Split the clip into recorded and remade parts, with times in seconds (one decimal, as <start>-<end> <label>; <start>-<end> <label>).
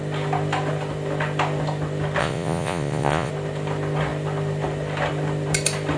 0.0-2.2 recorded; 2.2-3.3 remade; 3.3-6.0 recorded